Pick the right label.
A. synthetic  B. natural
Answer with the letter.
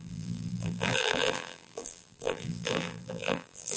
A